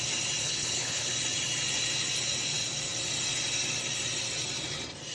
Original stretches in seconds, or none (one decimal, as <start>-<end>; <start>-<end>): 0.0-0.4; 1.1-5.1